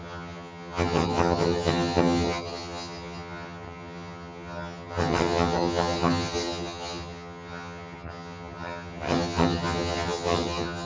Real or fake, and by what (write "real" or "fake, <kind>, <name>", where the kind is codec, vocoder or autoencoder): fake, vocoder, HiFi-GAN